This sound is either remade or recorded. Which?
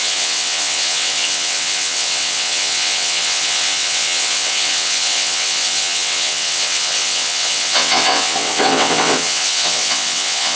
remade